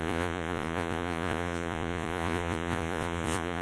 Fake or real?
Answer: fake